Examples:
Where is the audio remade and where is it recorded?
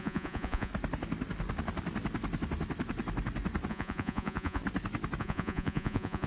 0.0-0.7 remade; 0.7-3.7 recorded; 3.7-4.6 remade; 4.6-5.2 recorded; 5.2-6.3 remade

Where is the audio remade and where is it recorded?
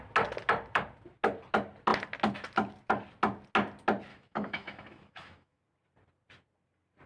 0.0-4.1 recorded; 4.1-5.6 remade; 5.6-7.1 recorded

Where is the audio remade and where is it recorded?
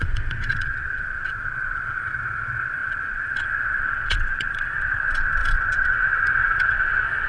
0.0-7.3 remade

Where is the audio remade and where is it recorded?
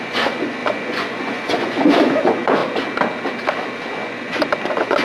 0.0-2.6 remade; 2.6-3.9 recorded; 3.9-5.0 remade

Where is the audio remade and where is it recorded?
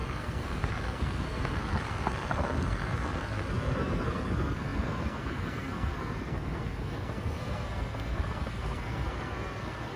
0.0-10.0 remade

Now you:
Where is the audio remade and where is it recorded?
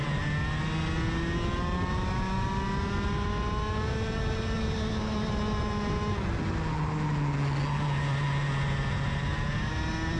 0.0-10.2 recorded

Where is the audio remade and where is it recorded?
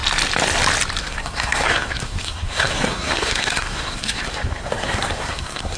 0.0-1.0 recorded; 1.0-5.8 remade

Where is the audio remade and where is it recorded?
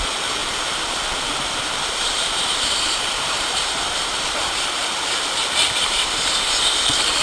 0.0-0.4 recorded; 0.4-4.7 remade; 4.7-5.8 recorded; 5.8-7.2 remade